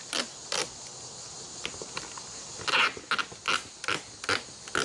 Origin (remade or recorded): recorded